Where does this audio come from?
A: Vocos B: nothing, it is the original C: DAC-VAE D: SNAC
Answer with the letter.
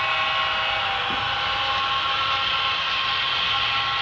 B